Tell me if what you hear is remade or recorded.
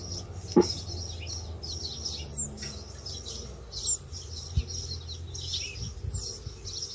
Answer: recorded